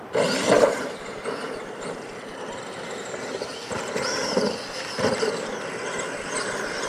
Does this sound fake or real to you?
fake